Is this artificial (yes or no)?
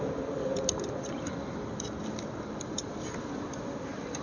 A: no